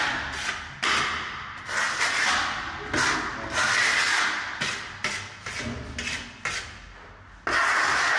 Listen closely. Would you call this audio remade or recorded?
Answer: recorded